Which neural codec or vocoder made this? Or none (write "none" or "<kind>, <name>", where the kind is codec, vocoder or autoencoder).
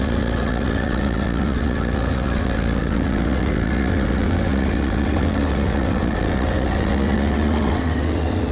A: vocoder, WaveNeXt